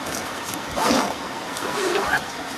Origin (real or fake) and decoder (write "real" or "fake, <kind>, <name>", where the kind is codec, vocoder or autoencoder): fake, codec, SNAC